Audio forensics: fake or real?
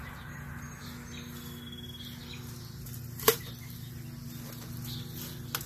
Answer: real